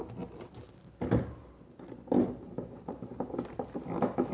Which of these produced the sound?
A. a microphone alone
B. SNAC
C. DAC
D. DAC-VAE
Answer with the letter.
A